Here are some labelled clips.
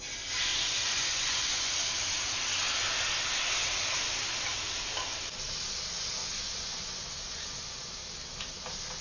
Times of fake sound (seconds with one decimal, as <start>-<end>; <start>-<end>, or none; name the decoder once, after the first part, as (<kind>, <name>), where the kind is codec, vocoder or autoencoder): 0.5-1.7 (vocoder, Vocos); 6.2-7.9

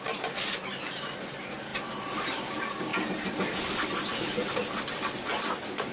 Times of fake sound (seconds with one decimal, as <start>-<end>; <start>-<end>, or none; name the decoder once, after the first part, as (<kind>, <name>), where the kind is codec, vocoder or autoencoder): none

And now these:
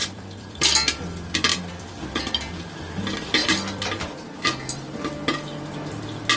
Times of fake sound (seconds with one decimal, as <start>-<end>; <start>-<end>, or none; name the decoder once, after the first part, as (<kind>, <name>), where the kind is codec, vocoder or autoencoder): 0.0-0.6 (vocoder, BigVGAN v2); 1.5-2.2; 3.4-4.0

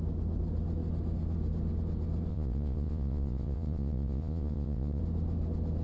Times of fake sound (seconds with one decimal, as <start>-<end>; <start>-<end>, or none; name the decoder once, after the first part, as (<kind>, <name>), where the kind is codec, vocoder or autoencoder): 2.3-5.0 (vocoder, Vocos)

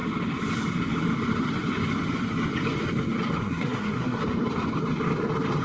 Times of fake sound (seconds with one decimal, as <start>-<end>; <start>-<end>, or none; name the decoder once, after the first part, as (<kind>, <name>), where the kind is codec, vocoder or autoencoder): 3.4-4.2 (codec, SNAC)

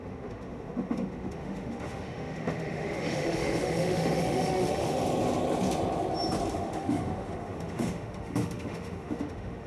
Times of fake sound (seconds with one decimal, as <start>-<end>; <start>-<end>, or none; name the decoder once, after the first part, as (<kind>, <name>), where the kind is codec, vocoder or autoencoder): 0.0-5.0 (autoencoder, DAC-VAE); 6.5-9.7

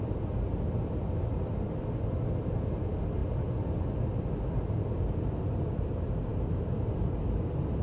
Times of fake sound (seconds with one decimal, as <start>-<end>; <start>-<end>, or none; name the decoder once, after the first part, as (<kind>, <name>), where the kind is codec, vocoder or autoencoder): none

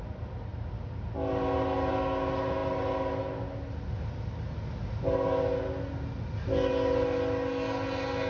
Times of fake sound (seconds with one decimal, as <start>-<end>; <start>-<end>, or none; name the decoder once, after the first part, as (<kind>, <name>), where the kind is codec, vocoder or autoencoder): none